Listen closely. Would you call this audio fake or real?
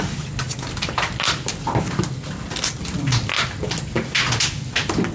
real